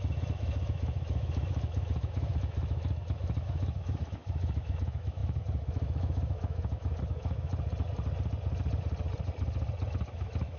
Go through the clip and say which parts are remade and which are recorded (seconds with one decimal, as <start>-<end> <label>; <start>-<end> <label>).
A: 0.0-7.5 remade; 7.5-9.9 recorded; 9.9-10.6 remade